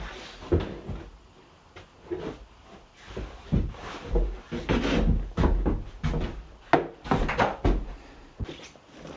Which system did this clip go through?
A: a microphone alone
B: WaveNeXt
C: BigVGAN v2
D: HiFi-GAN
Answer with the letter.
A